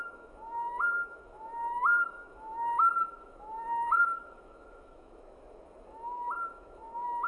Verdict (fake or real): fake